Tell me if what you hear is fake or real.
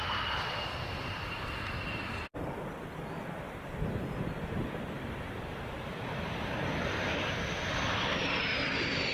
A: fake